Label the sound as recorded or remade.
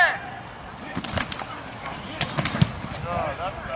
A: recorded